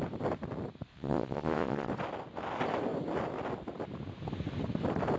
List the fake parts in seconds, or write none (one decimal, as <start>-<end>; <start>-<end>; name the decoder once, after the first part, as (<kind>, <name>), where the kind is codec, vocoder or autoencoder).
0.9-1.9 (vocoder, Vocos)